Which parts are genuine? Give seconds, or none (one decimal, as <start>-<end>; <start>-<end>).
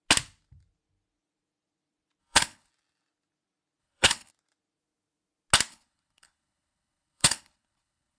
0.0-2.2; 2.7-3.8; 4.3-5.7